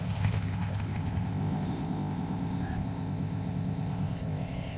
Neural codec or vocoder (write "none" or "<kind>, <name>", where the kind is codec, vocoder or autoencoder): codec, ZipCodec